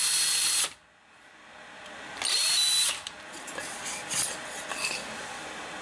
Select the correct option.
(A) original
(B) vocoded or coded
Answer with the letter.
A